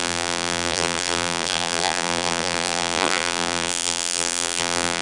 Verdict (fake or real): fake